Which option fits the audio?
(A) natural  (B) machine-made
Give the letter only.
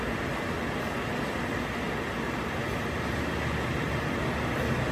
A